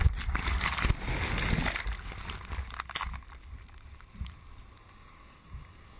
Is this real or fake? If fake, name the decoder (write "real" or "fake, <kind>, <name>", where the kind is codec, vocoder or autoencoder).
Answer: real